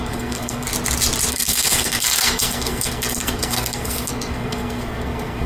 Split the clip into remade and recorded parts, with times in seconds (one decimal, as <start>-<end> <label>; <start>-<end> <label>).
0.0-0.7 remade; 0.7-1.3 recorded; 1.3-5.5 remade